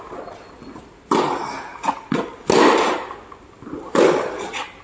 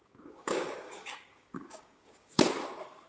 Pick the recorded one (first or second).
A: first